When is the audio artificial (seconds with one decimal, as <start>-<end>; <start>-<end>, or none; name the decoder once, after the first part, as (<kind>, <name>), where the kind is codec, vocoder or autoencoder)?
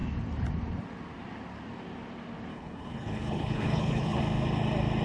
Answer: 2.5-4.2 (codec, HILCodec)